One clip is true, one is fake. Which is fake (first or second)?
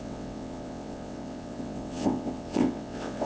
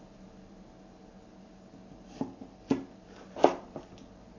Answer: first